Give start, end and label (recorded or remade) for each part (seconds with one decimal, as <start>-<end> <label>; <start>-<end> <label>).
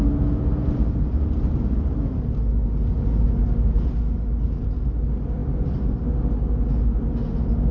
0.0-7.7 recorded